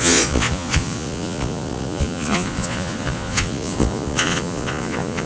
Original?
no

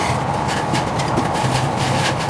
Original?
yes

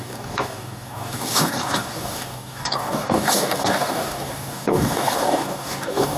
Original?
no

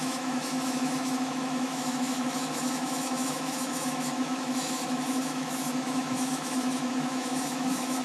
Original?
no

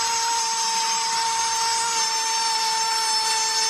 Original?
yes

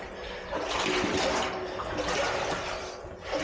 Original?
yes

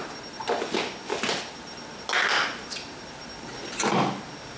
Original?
yes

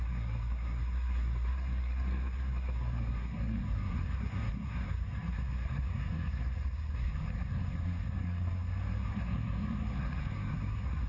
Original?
no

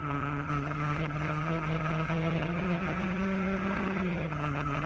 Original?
no